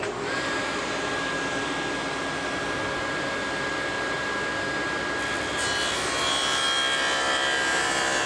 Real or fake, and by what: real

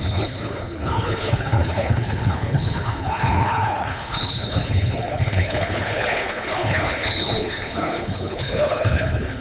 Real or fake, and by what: fake, codec, HILCodec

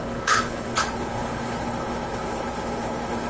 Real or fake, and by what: fake, codec, HILCodec